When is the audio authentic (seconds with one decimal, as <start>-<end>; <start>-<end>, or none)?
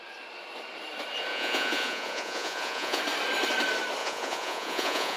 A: 0.0-1.3; 3.0-4.0